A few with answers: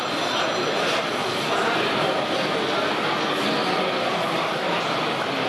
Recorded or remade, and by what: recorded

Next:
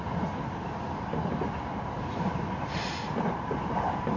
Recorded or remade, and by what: recorded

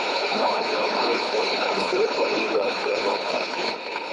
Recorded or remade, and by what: remade, codec, HILCodec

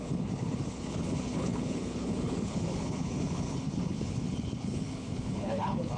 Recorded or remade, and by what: remade, codec, HILCodec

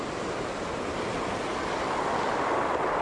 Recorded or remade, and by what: recorded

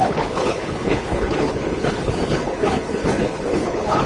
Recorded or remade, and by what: remade, codec, HILCodec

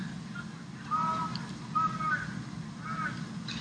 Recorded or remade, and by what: recorded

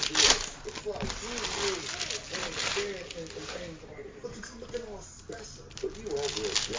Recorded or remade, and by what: recorded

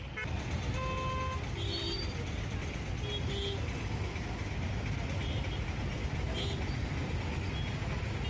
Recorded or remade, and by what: recorded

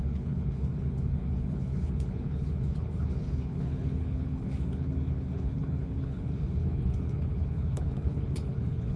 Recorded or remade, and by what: remade, codec, HILCodec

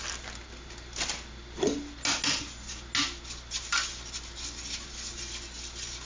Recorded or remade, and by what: recorded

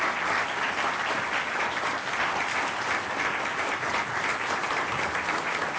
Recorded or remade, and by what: recorded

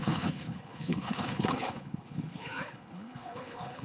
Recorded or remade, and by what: remade, codec, HILCodec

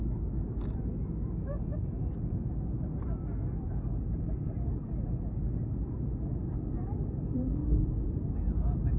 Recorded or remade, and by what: recorded